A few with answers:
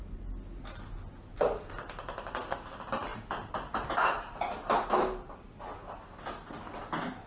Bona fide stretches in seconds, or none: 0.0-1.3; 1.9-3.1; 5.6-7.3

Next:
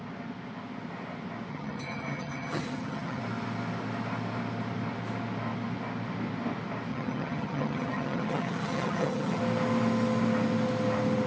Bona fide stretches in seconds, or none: 0.0-1.5; 3.2-6.9; 9.4-11.3

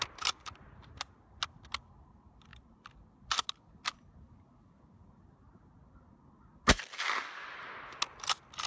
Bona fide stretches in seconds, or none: 0.0-8.7

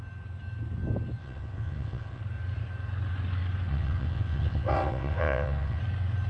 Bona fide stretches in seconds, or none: 0.0-1.2; 2.2-3.7; 5.8-6.3

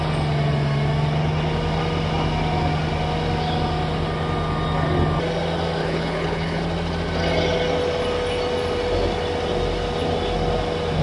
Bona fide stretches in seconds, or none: 0.0-5.8; 6.6-11.0

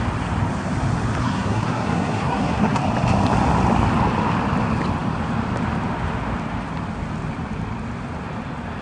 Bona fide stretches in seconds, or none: 0.0-1.2; 2.8-8.8

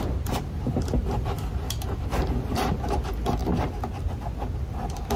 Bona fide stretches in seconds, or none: 0.0-1.0; 2.6-5.2

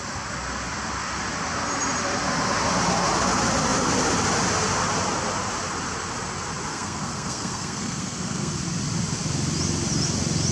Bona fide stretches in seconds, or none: 0.0-6.7; 8.5-10.5